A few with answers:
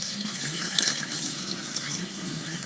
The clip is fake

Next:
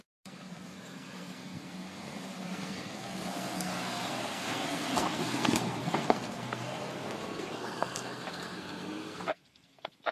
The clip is fake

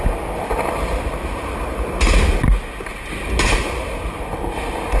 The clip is real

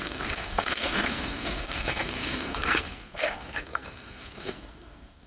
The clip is fake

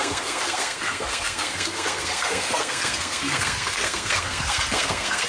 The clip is fake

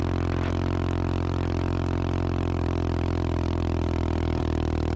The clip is real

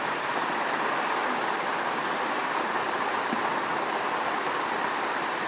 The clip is real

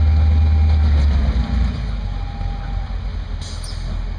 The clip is real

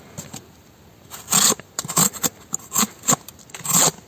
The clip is real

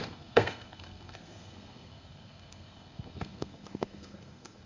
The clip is fake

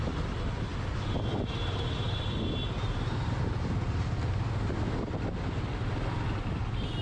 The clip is real